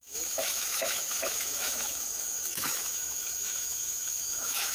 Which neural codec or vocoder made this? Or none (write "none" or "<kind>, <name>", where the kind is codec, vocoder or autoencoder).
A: autoencoder, DAC-VAE